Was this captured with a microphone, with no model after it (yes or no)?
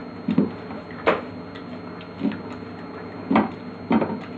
yes